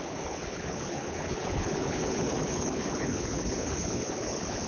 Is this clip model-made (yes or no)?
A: yes